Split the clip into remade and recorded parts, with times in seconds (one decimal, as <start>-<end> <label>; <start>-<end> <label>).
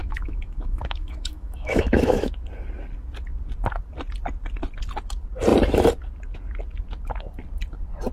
0.0-2.3 remade; 2.3-8.1 recorded